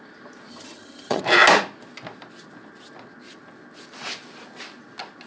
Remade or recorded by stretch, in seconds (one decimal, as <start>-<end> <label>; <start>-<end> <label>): 0.0-0.5 recorded; 0.5-1.2 remade; 1.2-5.3 recorded